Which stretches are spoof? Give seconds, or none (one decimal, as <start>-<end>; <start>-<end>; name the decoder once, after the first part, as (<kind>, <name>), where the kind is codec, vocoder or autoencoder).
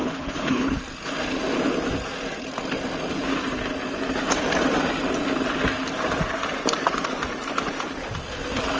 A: 0.0-0.8 (codec, HILCodec)